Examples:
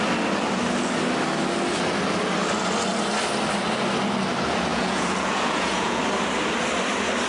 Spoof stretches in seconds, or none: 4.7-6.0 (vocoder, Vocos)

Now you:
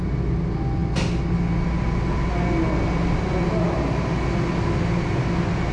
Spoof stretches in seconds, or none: none

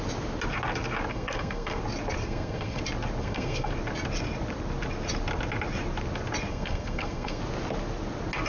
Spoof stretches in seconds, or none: 1.1-1.8 (codec, SNAC); 2.2-2.8; 3.2-3.7; 6.5-7.4